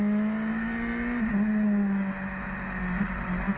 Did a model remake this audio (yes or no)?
no